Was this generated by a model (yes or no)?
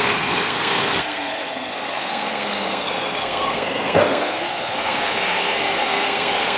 yes